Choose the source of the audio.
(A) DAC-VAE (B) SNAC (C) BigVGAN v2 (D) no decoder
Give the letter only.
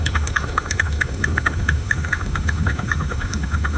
A